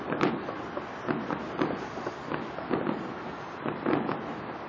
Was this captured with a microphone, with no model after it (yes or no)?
yes